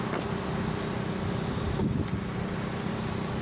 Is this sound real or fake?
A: real